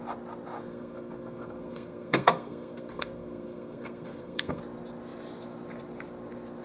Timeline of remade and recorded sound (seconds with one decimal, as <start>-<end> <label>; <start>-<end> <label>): 0.0-0.6 recorded; 0.6-4.6 remade; 4.6-6.6 recorded